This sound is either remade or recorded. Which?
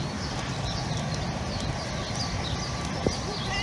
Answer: recorded